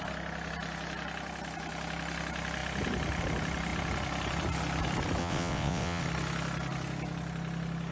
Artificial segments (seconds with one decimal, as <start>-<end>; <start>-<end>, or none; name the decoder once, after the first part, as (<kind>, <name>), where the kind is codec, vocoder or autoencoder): 5.2-6.0 (vocoder, WaveNeXt)